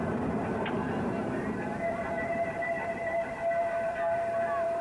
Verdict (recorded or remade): remade